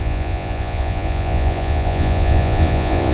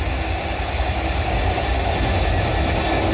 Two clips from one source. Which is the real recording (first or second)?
second